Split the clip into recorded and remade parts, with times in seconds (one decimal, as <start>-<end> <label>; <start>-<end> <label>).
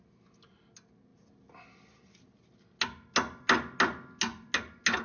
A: 0.0-5.0 recorded